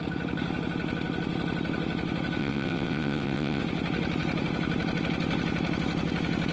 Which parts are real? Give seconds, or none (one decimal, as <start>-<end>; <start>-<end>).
0.0-2.4; 3.6-6.5